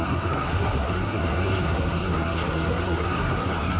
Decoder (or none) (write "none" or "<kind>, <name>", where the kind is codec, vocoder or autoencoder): codec, SNAC